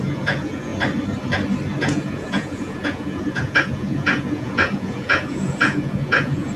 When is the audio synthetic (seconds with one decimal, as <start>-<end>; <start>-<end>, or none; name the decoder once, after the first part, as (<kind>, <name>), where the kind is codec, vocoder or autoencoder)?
0.0-0.7 (vocoder, Vocos); 1.8-6.6